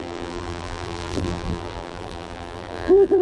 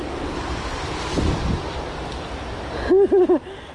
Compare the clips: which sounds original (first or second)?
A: second